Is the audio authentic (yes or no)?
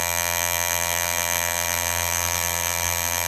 no